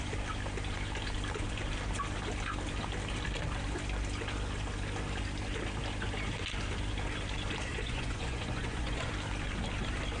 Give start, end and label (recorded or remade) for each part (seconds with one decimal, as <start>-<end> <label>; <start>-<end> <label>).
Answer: 0.0-7.7 recorded; 7.7-9.1 remade; 9.1-10.2 recorded